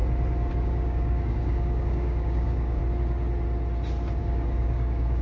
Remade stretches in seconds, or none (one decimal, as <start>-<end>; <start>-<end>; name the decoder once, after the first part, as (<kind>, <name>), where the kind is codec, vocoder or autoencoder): 0.5-2.8 (codec, DAC); 4.2-5.2